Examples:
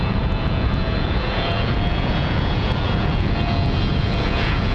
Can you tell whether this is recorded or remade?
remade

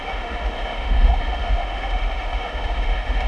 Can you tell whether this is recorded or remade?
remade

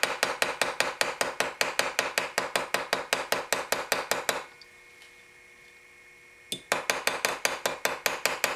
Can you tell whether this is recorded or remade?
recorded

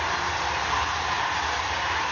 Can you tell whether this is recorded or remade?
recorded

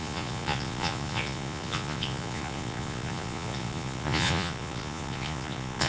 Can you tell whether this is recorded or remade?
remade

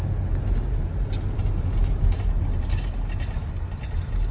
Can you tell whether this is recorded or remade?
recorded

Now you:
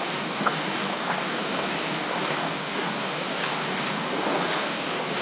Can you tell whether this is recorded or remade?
remade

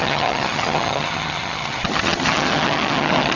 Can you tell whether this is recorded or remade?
remade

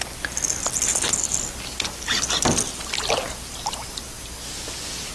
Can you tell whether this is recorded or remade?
recorded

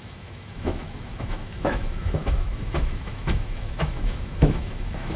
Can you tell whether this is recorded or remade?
remade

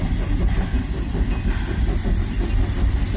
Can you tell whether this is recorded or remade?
recorded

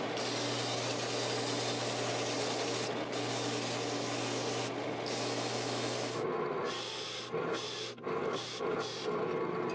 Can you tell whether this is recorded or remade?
recorded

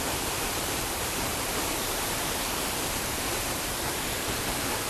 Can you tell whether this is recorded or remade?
remade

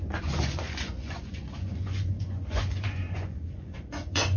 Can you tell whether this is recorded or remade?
remade